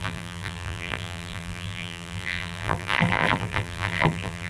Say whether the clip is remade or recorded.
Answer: remade